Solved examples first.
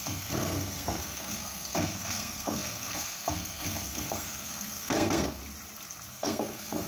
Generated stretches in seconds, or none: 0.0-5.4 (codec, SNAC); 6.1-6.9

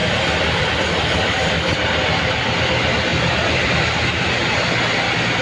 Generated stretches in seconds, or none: 0.0-2.6 (vocoder, BigVGAN v2); 3.1-3.7

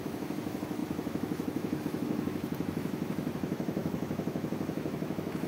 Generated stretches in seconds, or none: 0.0-5.5 (autoencoder, DAC-VAE)

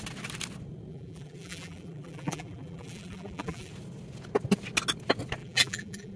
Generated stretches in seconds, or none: 0.9-3.7 (vocoder, BigVGAN v2); 5.4-6.2

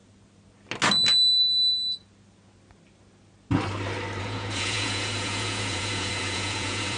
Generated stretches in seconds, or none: 4.2-7.0 (vocoder, Vocos)

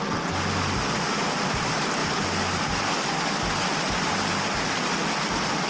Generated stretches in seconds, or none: none

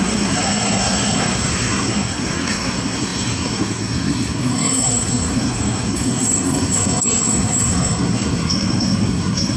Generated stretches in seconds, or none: 0.0-9.6 (codec, SNAC)

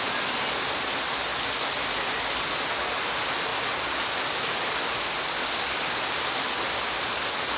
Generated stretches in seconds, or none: 5.4-5.9 (codec, DAC)